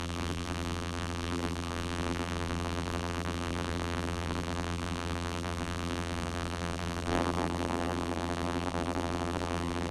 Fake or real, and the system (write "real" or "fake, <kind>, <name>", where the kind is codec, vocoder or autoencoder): fake, vocoder, BigVGAN v2